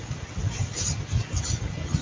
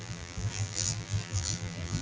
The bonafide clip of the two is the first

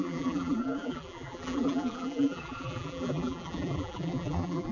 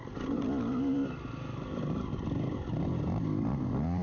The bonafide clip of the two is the second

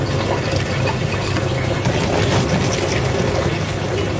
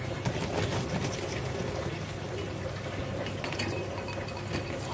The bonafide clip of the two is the first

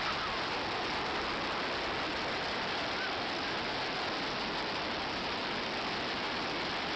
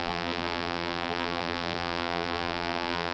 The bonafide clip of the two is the first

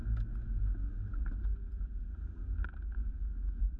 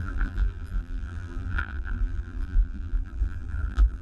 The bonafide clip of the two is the first